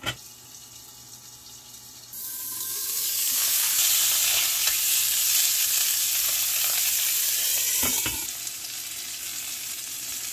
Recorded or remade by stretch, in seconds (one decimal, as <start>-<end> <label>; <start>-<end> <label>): 0.0-2.2 recorded; 2.2-3.8 remade; 3.8-10.3 recorded